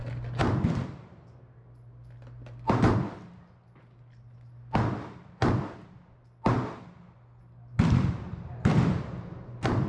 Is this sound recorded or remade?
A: recorded